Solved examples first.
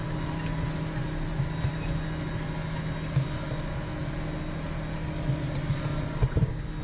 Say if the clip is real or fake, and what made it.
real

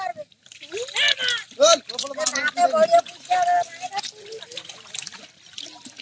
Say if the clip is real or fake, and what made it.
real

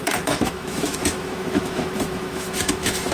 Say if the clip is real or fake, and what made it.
fake, autoencoder, DAC-VAE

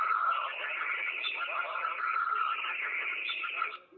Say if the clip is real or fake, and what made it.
real